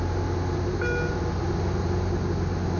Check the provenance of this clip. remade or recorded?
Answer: recorded